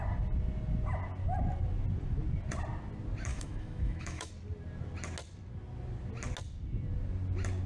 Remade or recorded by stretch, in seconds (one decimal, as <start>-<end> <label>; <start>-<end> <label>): 0.0-3.3 recorded; 3.3-4.3 remade; 4.3-7.7 recorded

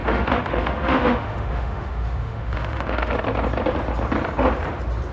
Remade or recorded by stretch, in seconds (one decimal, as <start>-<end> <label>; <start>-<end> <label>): 0.0-3.1 remade; 3.1-5.1 recorded

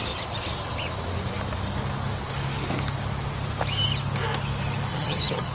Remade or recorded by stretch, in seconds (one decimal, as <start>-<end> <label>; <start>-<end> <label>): 0.0-4.9 recorded; 4.9-5.5 remade

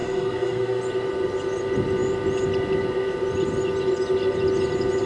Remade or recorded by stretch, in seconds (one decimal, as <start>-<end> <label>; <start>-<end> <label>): 0.0-0.8 remade; 0.8-5.1 recorded

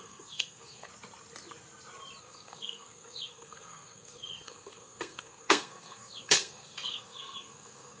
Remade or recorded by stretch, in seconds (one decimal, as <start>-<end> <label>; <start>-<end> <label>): 0.0-0.9 remade; 0.9-2.2 recorded; 2.2-8.0 remade